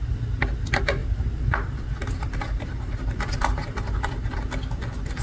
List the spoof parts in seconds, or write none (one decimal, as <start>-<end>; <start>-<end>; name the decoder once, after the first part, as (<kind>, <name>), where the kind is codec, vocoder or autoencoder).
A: 1.0-4.1 (vocoder, BigVGAN v2)